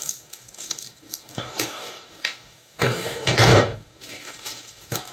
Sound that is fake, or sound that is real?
fake